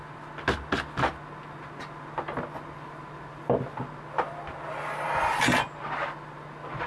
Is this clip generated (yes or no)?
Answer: no